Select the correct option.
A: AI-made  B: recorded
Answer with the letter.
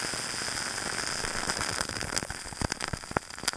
B